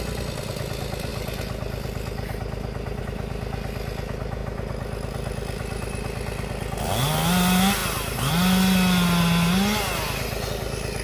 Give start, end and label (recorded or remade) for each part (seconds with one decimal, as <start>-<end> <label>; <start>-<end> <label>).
0.0-11.0 recorded